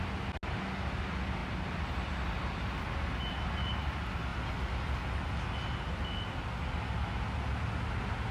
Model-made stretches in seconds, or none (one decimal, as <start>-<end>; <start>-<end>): none